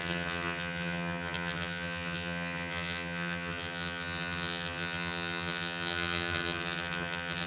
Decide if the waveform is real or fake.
fake